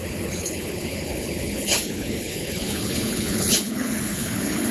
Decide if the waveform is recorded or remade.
remade